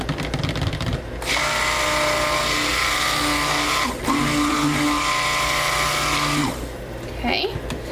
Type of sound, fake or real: real